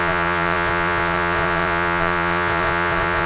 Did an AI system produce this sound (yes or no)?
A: yes